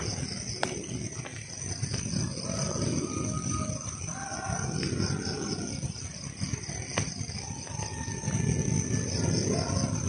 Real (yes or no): yes